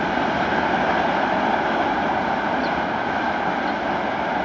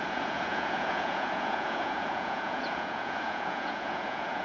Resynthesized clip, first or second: second